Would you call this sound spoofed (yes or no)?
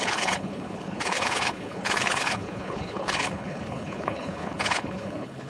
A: yes